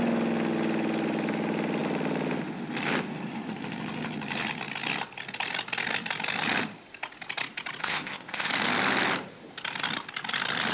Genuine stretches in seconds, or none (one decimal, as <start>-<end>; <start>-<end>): 0.0-7.8; 8.5-10.7